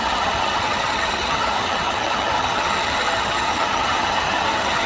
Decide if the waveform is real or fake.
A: fake